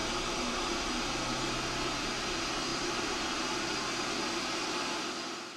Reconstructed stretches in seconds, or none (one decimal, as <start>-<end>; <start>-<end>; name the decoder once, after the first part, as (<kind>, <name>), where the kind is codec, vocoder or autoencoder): 0.0-1.0 (vocoder, BigVGAN v2); 2.7-3.4